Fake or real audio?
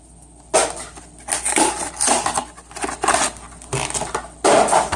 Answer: real